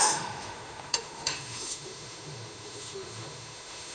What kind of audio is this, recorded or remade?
remade